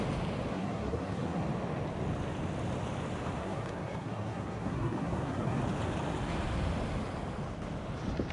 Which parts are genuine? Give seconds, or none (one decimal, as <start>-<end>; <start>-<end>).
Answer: 0.0-0.5; 1.4-3.4; 5.6-8.3